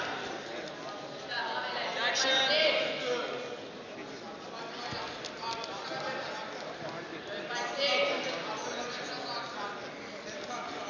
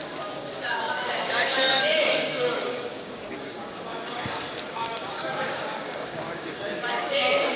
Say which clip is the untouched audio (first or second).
first